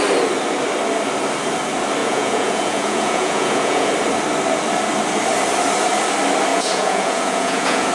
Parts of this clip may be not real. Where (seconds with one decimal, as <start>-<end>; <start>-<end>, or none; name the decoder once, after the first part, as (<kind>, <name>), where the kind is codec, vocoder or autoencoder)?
2.0-3.9 (vocoder, Vocos); 6.5-7.9